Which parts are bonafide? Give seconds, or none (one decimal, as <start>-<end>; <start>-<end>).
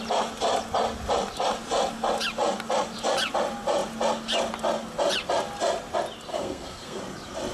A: 0.0-6.3; 7.0-7.5